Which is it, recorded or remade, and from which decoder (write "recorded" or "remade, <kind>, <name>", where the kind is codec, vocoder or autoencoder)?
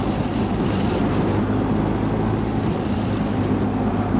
recorded